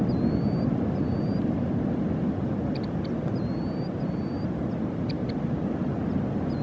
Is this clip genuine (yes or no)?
yes